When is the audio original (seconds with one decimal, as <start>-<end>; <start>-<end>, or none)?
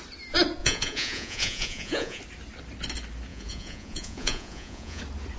0.0-0.6; 2.2-3.3; 5.0-5.4